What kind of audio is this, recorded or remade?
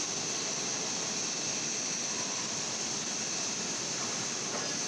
recorded